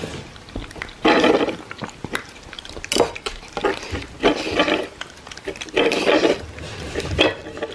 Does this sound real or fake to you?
real